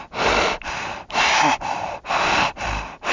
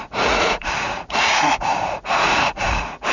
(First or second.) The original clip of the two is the first